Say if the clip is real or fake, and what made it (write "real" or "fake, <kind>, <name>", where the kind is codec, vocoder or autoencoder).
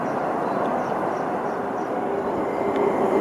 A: real